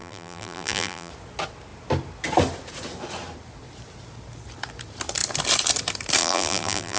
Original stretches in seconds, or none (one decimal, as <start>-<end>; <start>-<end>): 1.1-6.2